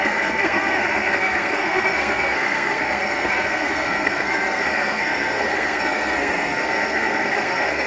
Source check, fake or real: fake